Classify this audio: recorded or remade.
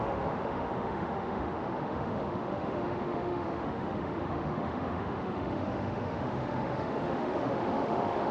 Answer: remade